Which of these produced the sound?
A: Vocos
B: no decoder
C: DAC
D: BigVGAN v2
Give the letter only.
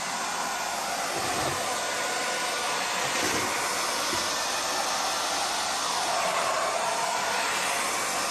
B